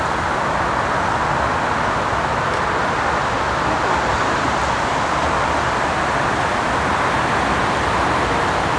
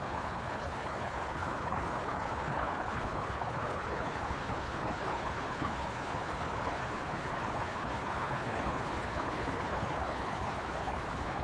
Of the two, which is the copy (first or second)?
second